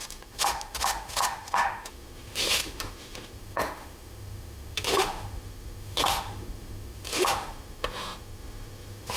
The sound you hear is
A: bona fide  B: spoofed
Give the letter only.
B